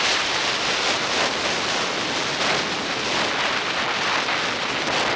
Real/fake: real